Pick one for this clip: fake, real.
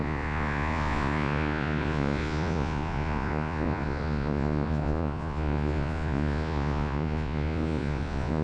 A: fake